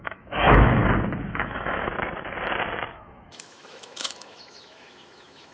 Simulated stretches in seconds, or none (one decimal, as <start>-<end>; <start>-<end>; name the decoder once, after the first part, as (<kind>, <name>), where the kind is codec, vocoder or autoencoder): 0.0-0.8 (autoencoder, DAC-VAE); 1.3-1.9; 2.9-5.5